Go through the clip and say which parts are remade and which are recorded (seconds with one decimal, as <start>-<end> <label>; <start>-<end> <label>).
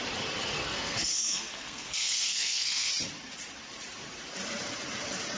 0.0-0.6 recorded; 0.6-2.9 remade; 2.9-5.4 recorded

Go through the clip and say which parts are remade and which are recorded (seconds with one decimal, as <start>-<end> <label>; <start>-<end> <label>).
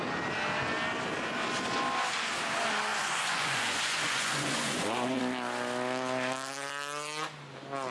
0.0-2.9 recorded; 2.9-5.2 remade; 5.2-7.9 recorded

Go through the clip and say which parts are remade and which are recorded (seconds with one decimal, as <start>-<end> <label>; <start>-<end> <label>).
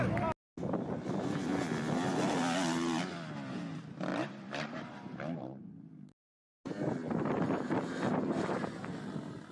0.0-4.1 recorded; 4.1-6.6 remade; 6.6-7.0 recorded; 7.0-8.7 remade; 8.7-9.5 recorded